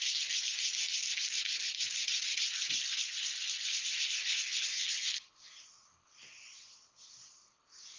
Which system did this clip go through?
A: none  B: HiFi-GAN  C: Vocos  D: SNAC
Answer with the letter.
A